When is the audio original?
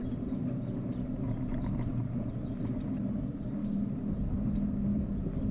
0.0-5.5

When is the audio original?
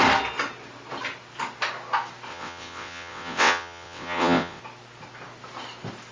0.0-2.3; 4.6-6.1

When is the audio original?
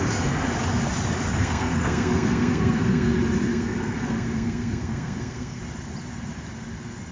0.0-1.4; 3.1-3.5; 5.6-7.1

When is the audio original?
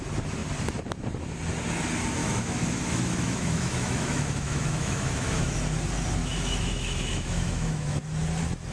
0.0-2.2; 5.6-6.2; 8.0-8.7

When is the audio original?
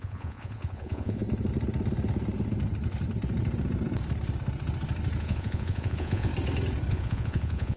1.2-5.2; 6.3-6.9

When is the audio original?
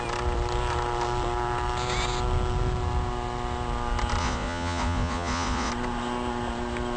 0.0-4.2; 5.7-7.0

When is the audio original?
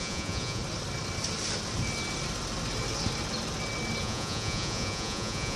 0.6-4.0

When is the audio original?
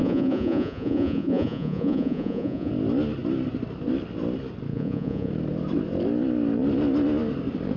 2.7-4.7; 5.3-7.8